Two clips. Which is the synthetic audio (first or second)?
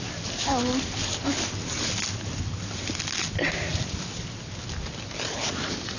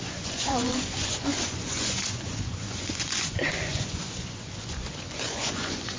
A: second